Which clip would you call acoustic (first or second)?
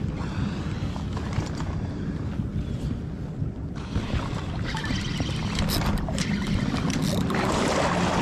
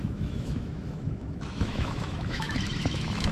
first